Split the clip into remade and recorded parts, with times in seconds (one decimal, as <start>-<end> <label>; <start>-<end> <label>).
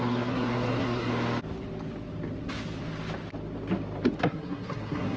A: 0.0-1.1 remade; 1.1-4.2 recorded; 4.2-5.2 remade